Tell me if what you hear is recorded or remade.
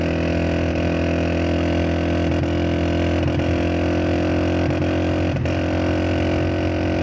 recorded